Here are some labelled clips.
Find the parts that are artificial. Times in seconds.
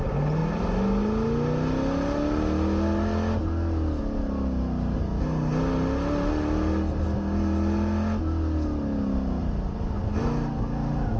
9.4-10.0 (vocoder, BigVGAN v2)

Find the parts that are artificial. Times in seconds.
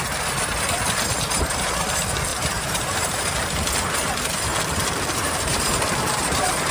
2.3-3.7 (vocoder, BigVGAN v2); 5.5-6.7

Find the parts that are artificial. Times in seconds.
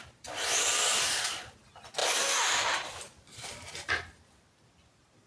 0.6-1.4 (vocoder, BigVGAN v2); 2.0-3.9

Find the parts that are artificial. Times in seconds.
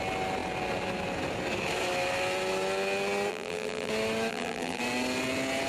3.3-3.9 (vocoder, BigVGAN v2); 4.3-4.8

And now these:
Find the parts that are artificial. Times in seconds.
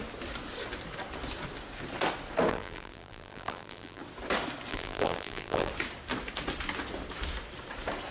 2.5-4.0 (vocoder, BigVGAN v2); 4.7-5.7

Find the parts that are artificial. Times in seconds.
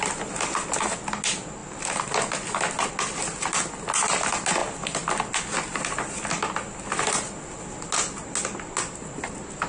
none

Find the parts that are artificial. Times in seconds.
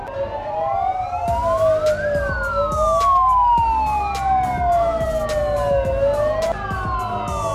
none